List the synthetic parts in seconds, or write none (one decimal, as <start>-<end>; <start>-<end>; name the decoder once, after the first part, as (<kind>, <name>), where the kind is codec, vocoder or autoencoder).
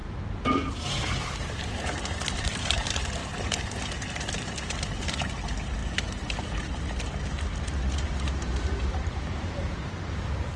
1.2-3.2 (vocoder, BigVGAN v2); 4.4-10.6